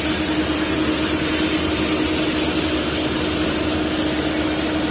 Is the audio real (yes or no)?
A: yes